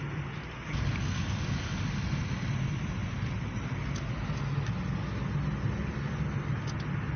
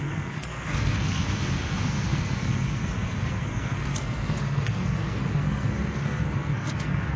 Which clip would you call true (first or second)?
first